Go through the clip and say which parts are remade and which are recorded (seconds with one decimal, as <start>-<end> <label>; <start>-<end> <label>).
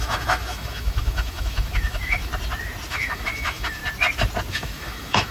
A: 0.0-2.3 remade; 2.3-2.9 recorded; 2.9-3.8 remade; 3.8-4.5 recorded; 4.5-5.3 remade